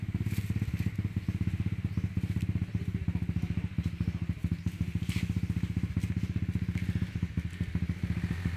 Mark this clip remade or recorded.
recorded